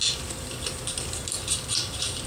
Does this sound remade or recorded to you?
recorded